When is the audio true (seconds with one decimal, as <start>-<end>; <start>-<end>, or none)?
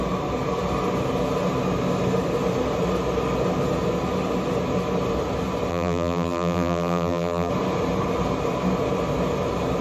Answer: 0.0-5.7; 7.5-9.8